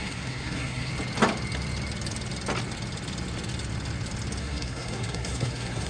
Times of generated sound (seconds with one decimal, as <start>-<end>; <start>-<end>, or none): 0.0-0.9; 4.4-5.9